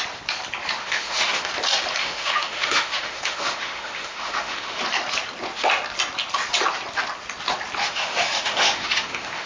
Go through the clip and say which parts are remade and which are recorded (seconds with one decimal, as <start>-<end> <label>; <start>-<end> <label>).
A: 0.0-0.8 recorded; 0.8-1.5 remade; 1.5-2.0 recorded; 2.0-4.8 remade; 4.8-7.8 recorded; 7.8-9.5 remade